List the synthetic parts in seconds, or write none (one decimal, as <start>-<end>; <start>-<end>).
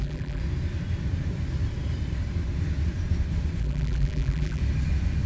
0.0-0.4; 3.6-4.6